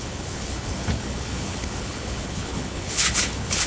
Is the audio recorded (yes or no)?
no